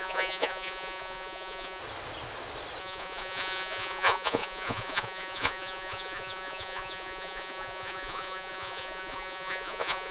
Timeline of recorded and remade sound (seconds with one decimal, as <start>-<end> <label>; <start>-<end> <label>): 0.0-1.8 remade; 1.8-2.8 recorded; 2.8-10.1 remade